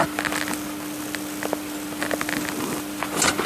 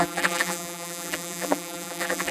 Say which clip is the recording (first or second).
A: first